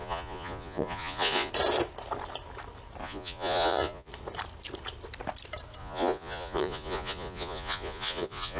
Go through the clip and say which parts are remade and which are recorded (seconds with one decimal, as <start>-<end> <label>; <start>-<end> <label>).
0.0-1.5 remade; 1.5-3.0 recorded; 3.0-4.1 remade; 4.1-5.8 recorded; 5.8-8.6 remade